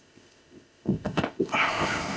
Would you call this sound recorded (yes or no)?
no